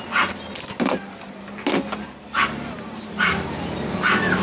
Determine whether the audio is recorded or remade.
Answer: recorded